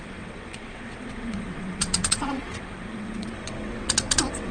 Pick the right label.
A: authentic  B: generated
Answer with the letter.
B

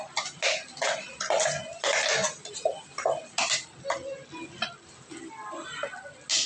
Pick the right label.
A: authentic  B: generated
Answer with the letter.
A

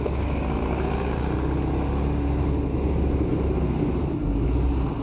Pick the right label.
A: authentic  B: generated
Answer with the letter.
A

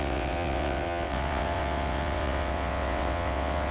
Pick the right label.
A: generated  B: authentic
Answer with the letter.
A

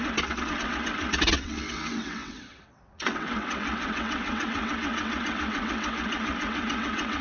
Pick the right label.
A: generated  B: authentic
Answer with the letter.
A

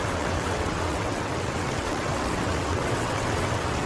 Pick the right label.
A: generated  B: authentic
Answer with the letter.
A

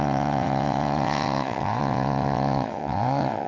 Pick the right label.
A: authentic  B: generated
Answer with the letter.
B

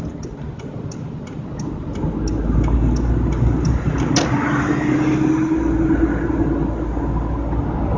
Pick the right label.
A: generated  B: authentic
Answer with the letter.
B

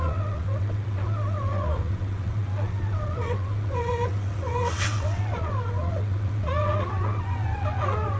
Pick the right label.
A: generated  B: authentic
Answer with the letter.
A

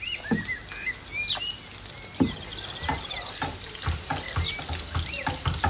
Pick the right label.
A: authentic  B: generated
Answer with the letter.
A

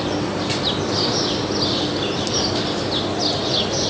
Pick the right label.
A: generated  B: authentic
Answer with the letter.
B